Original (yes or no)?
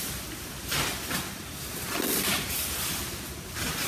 yes